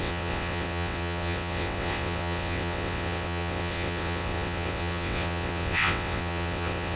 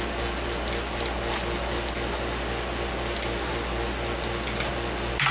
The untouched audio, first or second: second